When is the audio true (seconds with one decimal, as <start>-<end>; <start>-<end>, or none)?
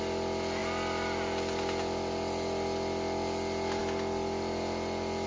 0.0-5.3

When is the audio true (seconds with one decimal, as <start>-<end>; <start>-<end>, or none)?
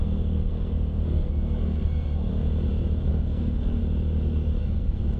2.3-3.1; 3.8-4.6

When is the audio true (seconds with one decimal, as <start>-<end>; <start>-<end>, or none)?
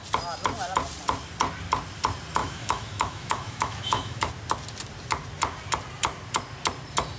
0.0-2.4; 4.3-7.2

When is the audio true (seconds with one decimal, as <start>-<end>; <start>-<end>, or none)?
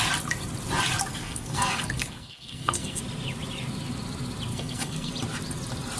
0.0-1.1; 3.0-4.5; 5.1-6.0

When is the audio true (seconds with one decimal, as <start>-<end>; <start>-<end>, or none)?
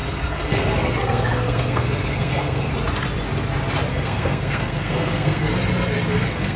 2.7-3.9; 5.5-6.1